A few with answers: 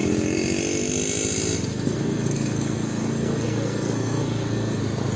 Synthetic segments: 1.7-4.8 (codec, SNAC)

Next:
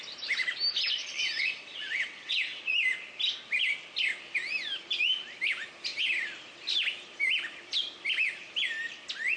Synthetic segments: 1.0-2.6 (vocoder, WaveNeXt)

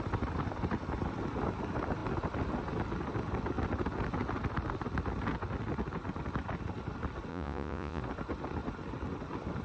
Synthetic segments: 7.3-8.0 (vocoder, Vocos)

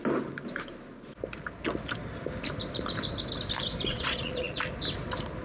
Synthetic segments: 3.9-4.6 (vocoder, Vocos)

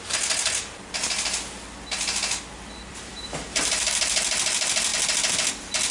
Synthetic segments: 2.9-4.0 (vocoder, BigVGAN v2)

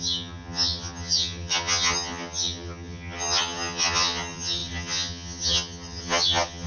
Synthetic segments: 0.0-6.7 (vocoder, HiFi-GAN)